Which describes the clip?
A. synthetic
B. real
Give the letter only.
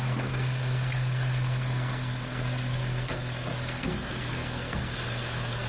A